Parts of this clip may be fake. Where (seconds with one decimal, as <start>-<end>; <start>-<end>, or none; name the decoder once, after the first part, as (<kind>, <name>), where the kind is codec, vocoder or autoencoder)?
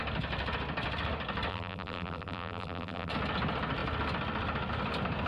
1.5-3.1 (vocoder, BigVGAN v2)